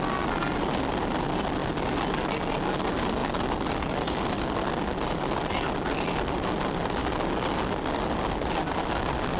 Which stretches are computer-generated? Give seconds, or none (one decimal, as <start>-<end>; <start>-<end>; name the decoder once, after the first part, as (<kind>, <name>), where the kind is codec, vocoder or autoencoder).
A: none

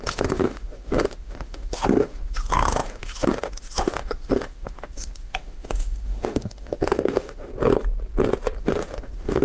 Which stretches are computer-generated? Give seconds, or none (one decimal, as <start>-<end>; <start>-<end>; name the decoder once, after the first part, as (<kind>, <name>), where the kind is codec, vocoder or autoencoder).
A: 0.0-7.5 (autoencoder, DAC-VAE); 8.6-9.4

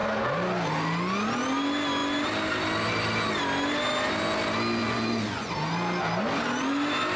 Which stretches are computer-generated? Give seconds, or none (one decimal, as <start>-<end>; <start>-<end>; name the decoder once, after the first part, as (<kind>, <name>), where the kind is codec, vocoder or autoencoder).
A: 4.8-5.5 (vocoder, Vocos)

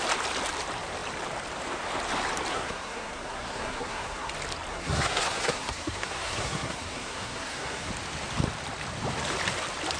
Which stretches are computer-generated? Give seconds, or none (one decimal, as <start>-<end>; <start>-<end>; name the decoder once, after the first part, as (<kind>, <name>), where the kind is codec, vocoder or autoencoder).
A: 2.5-4.3 (codec, SNAC); 4.7-7.9

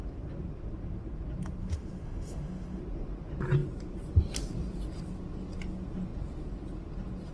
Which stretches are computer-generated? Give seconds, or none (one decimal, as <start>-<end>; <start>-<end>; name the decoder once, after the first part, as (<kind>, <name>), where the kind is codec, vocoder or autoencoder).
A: 1.6-2.8 (autoencoder, DAC-VAE)

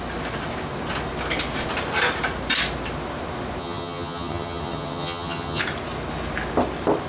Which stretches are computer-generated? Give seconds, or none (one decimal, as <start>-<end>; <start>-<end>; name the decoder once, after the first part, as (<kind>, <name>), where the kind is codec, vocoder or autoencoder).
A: 3.6-5.6 (vocoder, HiFi-GAN)

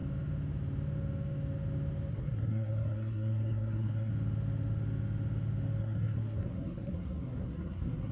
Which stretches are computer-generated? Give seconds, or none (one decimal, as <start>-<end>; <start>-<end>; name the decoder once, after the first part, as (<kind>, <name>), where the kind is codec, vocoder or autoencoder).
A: 2.1-4.1 (codec, SNAC); 5.8-8.1

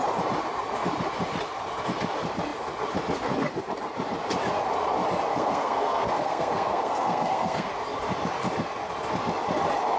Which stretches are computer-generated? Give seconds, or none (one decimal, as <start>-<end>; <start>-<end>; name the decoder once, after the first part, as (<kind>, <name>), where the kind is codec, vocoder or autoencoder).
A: 5.3-7.7 (codec, SNAC)